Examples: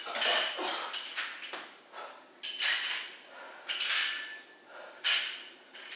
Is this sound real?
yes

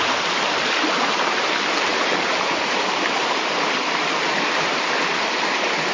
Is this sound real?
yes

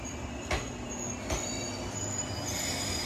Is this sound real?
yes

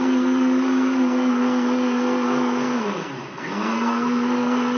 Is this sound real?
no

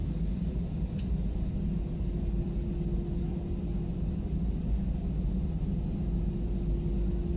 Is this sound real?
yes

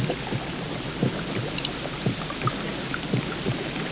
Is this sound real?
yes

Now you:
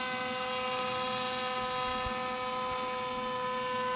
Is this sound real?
yes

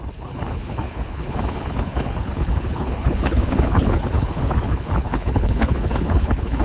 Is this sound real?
no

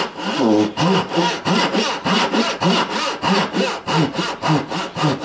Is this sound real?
yes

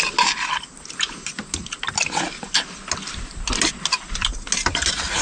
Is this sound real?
yes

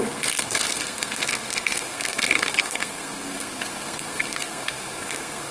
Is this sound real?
no